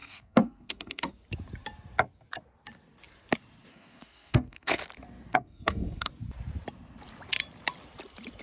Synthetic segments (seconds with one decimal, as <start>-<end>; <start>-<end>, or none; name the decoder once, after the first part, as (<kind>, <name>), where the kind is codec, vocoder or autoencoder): 0.0-1.1 (codec, SNAC); 3.7-4.8; 5.3-6.1